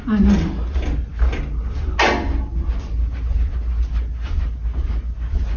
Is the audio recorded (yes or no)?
yes